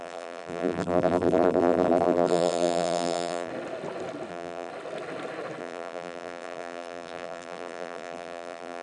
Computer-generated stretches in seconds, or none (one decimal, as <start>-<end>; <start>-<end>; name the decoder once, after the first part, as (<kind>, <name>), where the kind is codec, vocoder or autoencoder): 0.0-3.5 (vocoder, BigVGAN v2); 4.3-4.7; 5.6-8.8